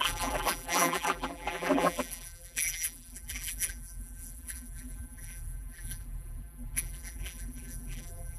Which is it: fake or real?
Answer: fake